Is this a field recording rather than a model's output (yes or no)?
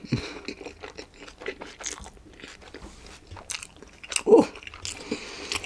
yes